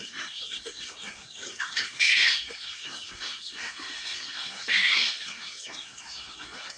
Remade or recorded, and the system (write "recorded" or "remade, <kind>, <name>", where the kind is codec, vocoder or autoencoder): remade, codec, SNAC